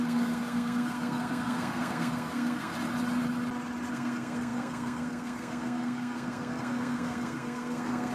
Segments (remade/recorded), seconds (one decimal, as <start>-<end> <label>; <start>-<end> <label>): 0.0-2.7 remade; 2.7-3.9 recorded; 3.9-8.1 remade